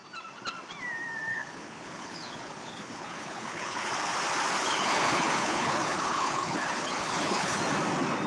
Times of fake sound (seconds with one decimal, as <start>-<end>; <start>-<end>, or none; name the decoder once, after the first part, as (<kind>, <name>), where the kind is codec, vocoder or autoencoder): 1.3-3.9 (codec, HILCodec); 4.6-7.6